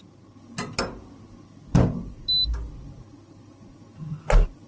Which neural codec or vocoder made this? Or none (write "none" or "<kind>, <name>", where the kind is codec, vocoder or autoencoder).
none